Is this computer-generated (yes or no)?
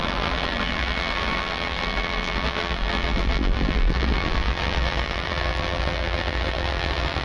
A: yes